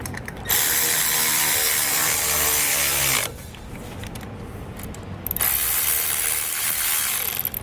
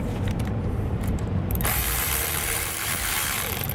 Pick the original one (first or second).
first